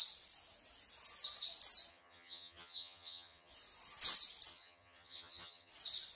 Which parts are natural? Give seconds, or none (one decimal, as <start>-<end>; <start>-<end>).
0.0-1.9; 3.5-4.5; 5.7-6.2